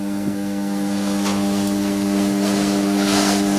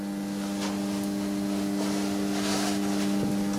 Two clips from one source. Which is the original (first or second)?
second